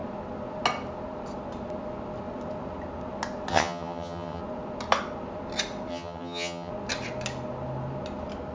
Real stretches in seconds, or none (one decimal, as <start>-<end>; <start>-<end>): 0.0-3.5; 4.4-5.9; 6.7-8.5